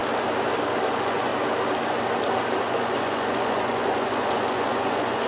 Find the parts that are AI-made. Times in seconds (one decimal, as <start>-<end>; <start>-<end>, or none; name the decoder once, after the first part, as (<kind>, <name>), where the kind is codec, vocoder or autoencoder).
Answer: 0.9-1.3 (vocoder, Vocos); 2.6-5.3